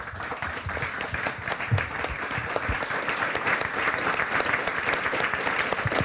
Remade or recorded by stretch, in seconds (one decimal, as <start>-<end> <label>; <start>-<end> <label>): 0.0-4.6 recorded; 4.6-5.5 remade; 5.5-6.0 recorded